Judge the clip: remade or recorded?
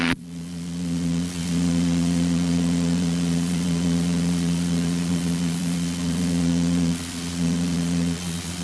remade